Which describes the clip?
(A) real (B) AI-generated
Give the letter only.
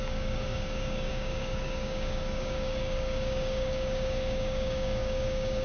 B